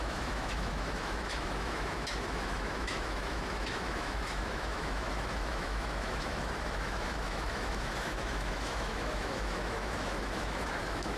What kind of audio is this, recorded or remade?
remade